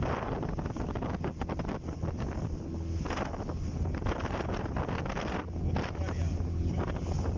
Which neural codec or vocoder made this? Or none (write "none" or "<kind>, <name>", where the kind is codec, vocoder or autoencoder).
none